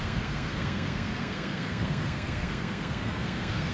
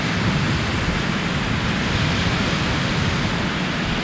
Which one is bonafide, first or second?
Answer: second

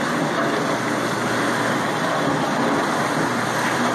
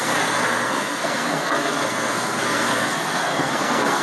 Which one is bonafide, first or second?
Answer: first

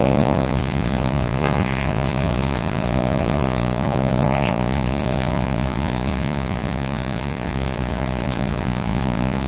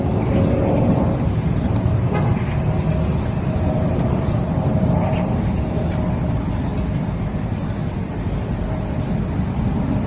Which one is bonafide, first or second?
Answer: second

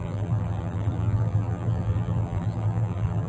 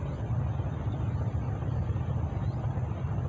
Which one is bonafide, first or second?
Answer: second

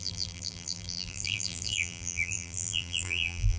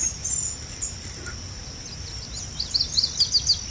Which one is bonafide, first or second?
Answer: second